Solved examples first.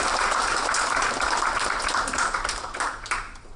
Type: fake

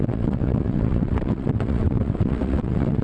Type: fake